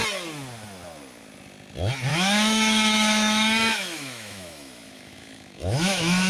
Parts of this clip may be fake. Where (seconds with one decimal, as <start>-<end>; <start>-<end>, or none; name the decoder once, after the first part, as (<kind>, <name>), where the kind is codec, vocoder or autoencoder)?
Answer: 2.1-6.3 (autoencoder, DAC-VAE)